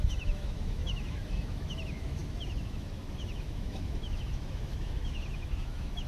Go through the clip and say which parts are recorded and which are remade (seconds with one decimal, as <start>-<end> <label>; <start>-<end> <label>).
0.0-6.1 remade